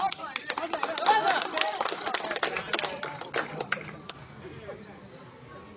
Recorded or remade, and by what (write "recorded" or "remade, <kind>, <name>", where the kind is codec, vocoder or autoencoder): recorded